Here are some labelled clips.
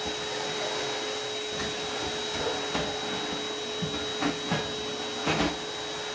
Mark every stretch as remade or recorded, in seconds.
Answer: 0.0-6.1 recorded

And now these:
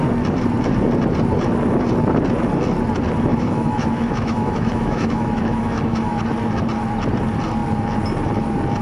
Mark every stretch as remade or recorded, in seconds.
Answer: 0.0-3.3 recorded; 3.3-6.2 remade; 6.2-8.8 recorded

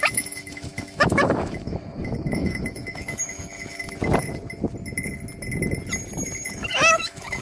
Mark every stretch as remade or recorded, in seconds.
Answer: 0.0-3.9 remade; 3.9-6.5 recorded; 6.5-7.4 remade

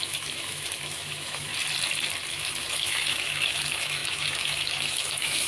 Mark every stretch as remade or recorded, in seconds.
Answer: 0.0-1.5 remade; 1.5-2.3 recorded; 2.3-5.5 remade

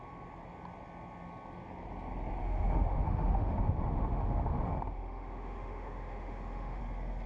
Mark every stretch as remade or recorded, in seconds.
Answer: 0.0-2.4 recorded; 2.4-6.8 remade; 6.8-7.3 recorded

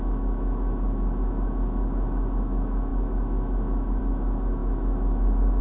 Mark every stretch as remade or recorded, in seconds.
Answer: 0.0-5.6 remade